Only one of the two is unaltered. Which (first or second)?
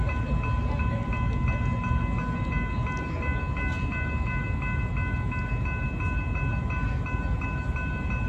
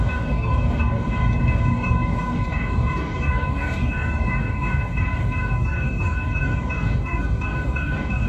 first